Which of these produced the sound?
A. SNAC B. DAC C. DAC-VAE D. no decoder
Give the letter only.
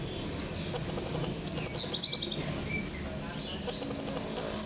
D